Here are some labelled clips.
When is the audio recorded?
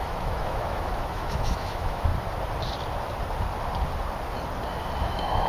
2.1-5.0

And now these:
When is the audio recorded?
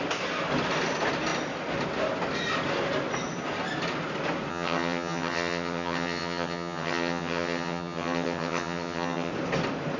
0.0-4.5; 9.3-10.0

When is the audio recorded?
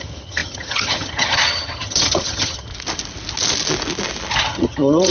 2.7-4.4